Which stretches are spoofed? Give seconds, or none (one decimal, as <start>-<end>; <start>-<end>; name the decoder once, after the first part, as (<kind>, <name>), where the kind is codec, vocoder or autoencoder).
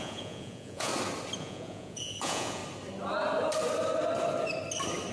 0.0-0.9 (vocoder, Vocos); 1.4-2.6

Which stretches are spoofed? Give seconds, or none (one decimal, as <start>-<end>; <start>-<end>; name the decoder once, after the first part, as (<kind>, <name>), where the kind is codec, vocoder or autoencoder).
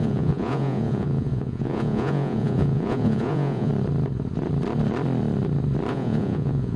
0.0-3.7 (vocoder, Vocos); 5.9-6.8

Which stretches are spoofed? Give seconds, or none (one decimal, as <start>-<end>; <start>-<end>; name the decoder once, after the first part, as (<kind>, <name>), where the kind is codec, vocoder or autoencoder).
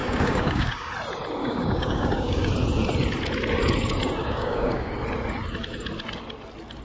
0.0-0.9 (codec, DAC); 1.4-2.5; 4.2-4.9